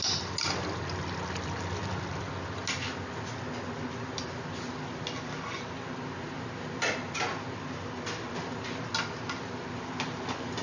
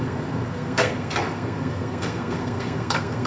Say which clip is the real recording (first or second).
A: first